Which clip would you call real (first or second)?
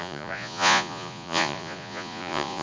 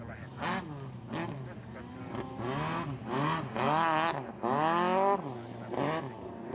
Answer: second